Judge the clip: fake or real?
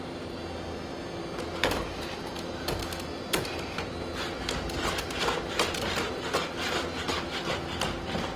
real